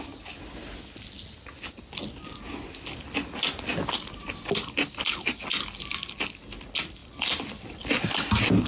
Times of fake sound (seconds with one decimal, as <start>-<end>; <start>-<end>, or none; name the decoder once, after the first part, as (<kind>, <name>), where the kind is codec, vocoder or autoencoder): none